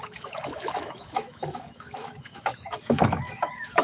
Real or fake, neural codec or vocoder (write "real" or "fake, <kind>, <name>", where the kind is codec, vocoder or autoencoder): fake, autoencoder, DAC-VAE